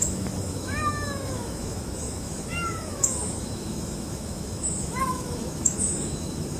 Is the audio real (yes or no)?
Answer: no